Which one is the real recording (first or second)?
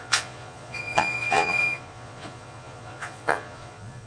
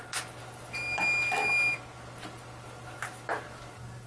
second